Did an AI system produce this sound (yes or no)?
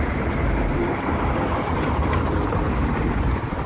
yes